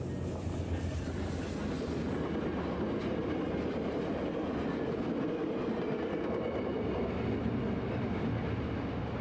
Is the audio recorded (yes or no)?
yes